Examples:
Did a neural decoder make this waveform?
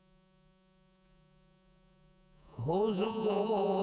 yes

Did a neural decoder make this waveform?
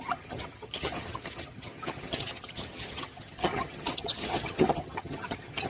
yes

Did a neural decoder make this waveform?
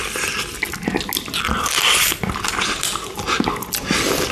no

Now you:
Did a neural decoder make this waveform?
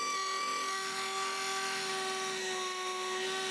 yes